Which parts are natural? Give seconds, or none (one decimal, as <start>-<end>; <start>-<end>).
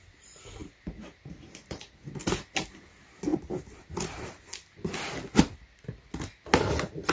0.0-7.1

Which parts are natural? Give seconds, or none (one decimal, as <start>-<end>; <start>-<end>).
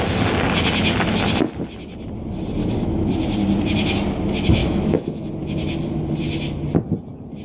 0.0-2.6; 3.1-4.6; 5.3-7.4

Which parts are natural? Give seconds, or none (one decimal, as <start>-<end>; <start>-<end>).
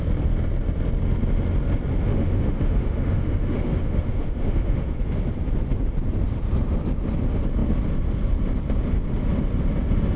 0.0-2.1; 5.0-10.2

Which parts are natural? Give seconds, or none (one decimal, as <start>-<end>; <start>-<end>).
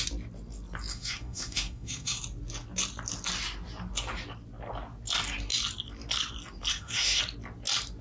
0.0-0.9; 2.2-6.7; 7.2-8.0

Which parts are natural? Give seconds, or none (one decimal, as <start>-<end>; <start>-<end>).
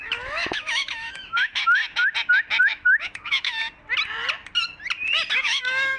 1.8-2.6; 3.6-5.3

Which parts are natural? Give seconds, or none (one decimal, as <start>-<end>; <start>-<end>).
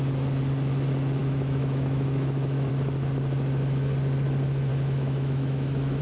0.0-1.2; 2.7-4.7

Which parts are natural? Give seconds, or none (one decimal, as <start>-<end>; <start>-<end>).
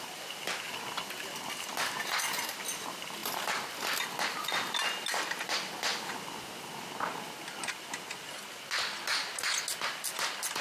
0.0-10.6